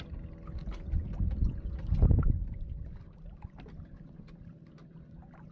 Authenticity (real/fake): real